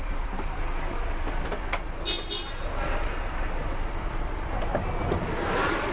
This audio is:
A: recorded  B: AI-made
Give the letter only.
B